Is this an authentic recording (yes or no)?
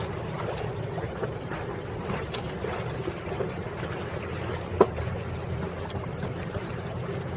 no